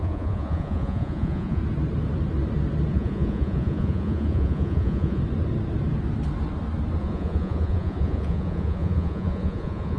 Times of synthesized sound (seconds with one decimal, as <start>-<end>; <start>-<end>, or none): 0.0-1.6; 2.9-5.2; 7.0-10.0